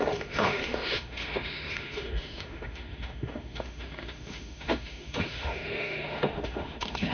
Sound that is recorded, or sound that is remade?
remade